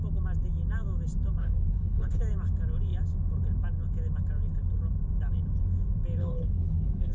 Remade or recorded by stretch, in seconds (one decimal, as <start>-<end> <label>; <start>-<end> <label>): 0.0-1.4 recorded; 1.4-2.2 remade; 2.2-6.2 recorded; 6.2-7.1 remade